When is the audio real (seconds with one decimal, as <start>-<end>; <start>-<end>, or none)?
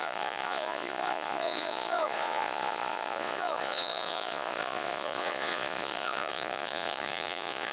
none